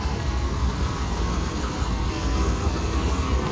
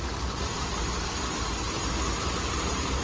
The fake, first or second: first